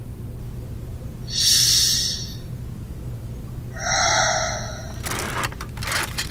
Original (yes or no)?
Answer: yes